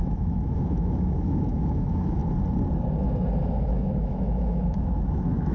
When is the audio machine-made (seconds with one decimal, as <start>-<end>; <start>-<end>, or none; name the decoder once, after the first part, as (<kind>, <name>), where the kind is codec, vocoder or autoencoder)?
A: 0.0-2.2 (autoencoder, DAC-VAE); 3.4-5.5